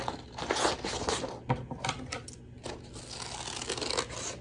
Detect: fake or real real